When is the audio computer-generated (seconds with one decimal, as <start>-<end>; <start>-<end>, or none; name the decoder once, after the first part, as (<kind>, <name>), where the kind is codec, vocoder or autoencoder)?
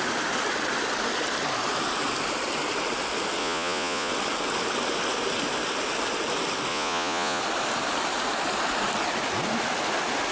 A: 3.4-4.1 (vocoder, Vocos); 6.7-7.4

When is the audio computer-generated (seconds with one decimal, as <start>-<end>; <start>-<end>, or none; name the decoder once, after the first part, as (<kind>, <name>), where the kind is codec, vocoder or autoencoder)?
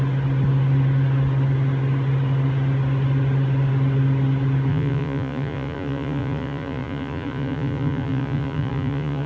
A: 4.7-9.3 (vocoder, Vocos)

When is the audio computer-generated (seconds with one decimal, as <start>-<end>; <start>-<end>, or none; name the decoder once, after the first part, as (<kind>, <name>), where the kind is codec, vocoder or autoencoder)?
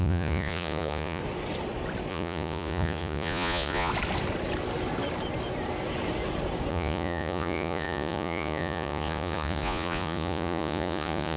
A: 0.0-1.2 (vocoder, Vocos); 2.1-3.9; 6.7-11.4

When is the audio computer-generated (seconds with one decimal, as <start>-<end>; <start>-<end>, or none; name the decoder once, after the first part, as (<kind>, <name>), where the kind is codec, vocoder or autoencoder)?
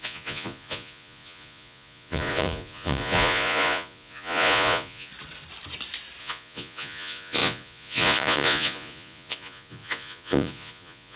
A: 0.0-5.1 (vocoder, Vocos); 6.2-11.2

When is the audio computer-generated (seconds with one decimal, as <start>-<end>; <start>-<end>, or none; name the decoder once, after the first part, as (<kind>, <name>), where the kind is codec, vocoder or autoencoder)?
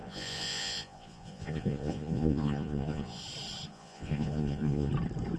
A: 0.0-3.2 (vocoder, Vocos); 3.7-4.9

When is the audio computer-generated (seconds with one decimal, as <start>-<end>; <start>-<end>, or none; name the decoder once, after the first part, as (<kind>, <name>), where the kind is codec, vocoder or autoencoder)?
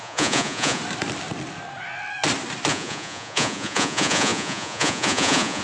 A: 0.0-0.8 (vocoder, Vocos); 2.7-5.6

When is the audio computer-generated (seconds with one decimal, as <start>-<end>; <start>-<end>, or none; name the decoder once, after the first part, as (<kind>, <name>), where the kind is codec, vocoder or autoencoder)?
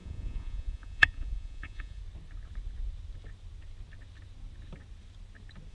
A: 0.0-2.0 (vocoder, Vocos)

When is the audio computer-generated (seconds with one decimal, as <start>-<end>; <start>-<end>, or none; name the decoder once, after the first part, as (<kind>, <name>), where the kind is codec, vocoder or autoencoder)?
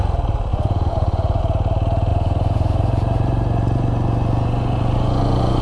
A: 0.5-1.4 (vocoder, Vocos); 2.1-5.6